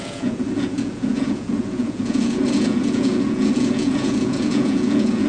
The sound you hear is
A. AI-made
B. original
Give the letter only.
A